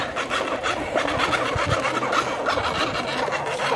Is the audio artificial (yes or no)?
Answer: no